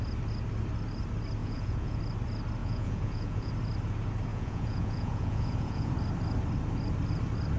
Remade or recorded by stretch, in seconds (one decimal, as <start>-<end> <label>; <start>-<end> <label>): 0.0-1.4 recorded; 1.4-2.0 remade; 2.0-2.6 recorded; 2.6-3.5 remade; 3.5-4.3 recorded; 4.3-5.9 remade; 5.9-7.6 recorded